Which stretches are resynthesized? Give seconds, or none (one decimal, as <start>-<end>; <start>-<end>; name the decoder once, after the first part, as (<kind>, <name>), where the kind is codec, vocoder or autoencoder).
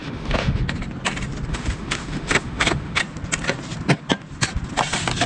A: 0.0-0.6 (autoencoder, DAC-VAE); 1.5-3.0